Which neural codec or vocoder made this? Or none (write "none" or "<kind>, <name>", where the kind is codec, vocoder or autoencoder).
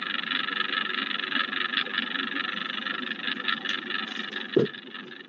none